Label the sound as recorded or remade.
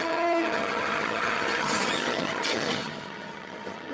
remade